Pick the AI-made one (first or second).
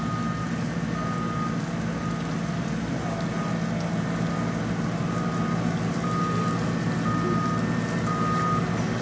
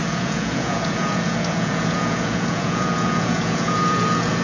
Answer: second